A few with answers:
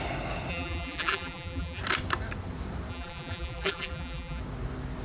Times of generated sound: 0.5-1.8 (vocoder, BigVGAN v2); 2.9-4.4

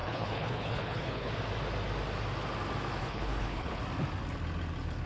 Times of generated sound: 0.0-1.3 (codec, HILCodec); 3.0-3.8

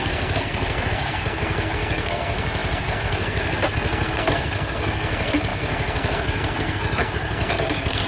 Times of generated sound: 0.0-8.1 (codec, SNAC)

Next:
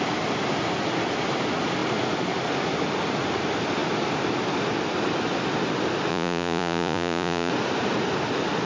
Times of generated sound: 6.1-7.5 (vocoder, Vocos)

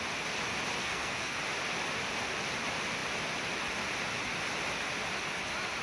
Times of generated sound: 0.8-1.4 (codec, SNAC)